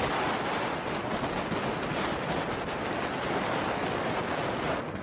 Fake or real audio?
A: real